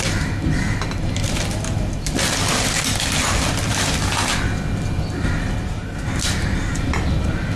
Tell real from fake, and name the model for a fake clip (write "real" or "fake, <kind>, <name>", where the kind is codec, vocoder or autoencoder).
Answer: real